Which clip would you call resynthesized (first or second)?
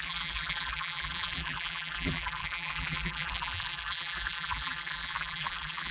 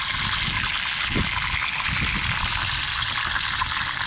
first